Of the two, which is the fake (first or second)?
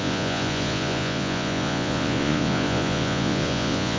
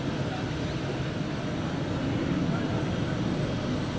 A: first